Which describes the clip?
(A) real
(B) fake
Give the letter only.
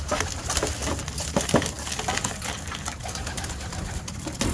A